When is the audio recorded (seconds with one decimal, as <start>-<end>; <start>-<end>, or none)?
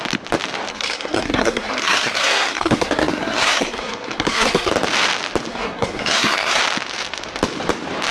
0.0-0.7; 4.7-5.5; 6.6-8.1